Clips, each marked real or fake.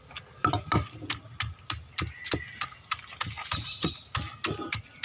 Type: real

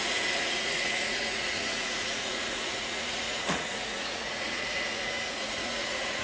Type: fake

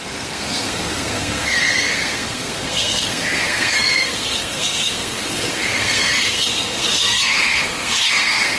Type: fake